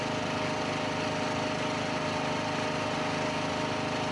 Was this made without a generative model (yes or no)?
yes